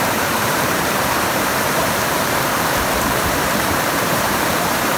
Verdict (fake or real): fake